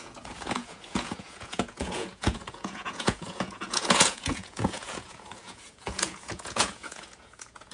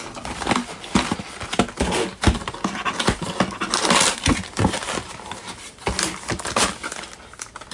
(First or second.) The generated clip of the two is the first